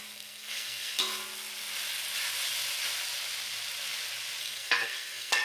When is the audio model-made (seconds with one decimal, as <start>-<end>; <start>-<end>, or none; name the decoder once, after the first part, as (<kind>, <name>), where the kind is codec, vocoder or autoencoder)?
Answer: 0.0-1.2 (codec, SNAC); 4.4-5.4